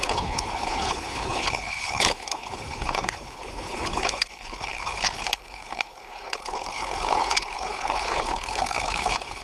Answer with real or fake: fake